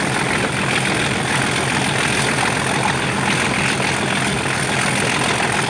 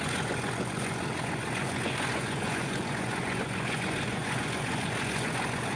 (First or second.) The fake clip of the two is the second